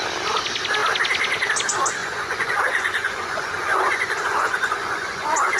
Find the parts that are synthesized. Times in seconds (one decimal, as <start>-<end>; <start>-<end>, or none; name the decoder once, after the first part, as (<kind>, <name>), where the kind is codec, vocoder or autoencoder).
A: 2.0-5.6 (vocoder, Vocos)